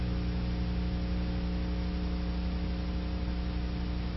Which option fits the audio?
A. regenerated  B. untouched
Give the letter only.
B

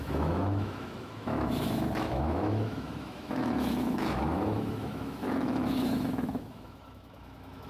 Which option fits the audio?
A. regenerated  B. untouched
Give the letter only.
A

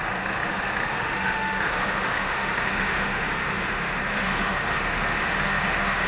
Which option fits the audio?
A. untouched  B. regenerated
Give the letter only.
B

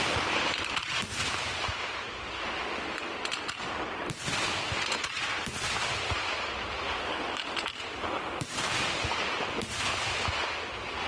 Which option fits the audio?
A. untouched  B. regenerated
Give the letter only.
A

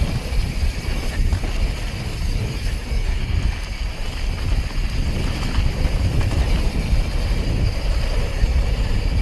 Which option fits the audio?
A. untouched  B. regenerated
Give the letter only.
A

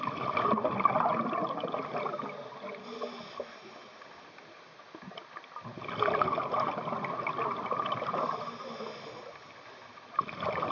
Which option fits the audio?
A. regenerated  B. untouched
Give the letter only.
B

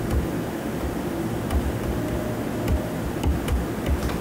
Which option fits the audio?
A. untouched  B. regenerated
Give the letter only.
A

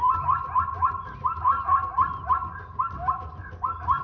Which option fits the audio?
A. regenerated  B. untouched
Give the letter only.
B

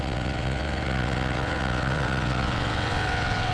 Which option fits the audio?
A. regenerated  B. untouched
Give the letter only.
A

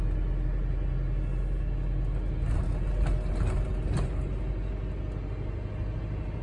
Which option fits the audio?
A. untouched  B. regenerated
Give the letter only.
A